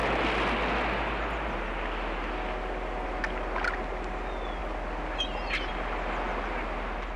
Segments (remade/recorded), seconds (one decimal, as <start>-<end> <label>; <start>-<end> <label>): 0.0-7.2 recorded